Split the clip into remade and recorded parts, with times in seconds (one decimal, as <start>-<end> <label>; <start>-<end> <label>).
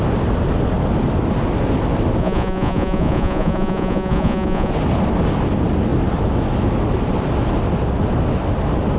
0.0-2.2 recorded; 2.2-4.7 remade; 4.7-9.0 recorded